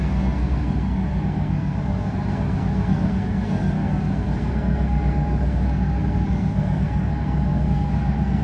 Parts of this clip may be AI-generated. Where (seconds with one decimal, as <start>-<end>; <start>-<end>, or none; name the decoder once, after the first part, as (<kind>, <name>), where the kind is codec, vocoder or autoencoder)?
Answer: 0.0-8.4 (codec, SNAC)